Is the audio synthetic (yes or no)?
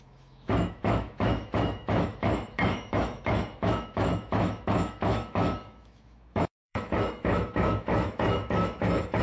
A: yes